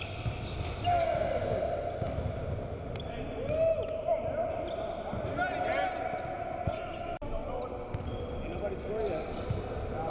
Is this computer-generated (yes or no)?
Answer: no